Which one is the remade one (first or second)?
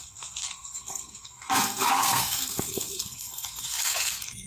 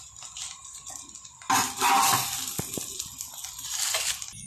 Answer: first